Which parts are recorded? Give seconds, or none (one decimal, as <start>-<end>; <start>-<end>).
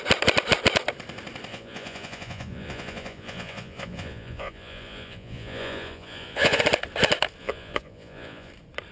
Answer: 0.0-1.5; 6.6-7.4; 8.5-8.9